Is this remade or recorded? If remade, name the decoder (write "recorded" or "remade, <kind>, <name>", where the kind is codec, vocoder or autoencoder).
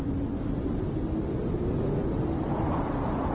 recorded